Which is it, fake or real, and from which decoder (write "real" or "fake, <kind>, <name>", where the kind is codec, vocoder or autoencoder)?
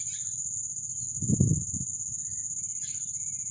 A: real